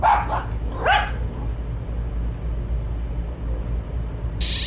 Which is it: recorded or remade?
recorded